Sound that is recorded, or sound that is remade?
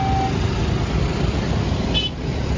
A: recorded